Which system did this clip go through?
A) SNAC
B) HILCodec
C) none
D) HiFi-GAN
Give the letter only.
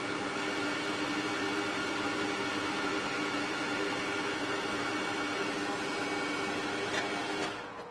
C